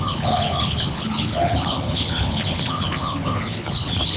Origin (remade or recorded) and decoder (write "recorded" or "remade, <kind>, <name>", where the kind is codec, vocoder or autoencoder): remade, codec, HILCodec